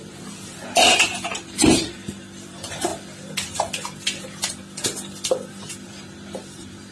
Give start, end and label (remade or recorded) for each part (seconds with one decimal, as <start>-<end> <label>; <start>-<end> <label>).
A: 0.0-2.9 remade; 2.9-5.5 recorded; 5.5-6.9 remade